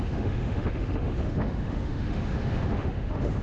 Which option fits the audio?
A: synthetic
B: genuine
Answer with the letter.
A